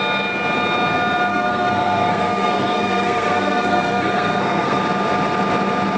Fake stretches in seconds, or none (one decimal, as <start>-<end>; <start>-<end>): 1.3-4.8